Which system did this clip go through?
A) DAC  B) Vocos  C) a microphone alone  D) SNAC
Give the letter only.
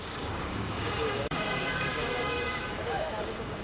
A